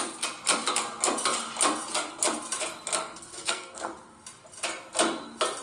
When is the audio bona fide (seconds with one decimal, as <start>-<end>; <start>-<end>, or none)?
0.0-3.0; 3.9-5.6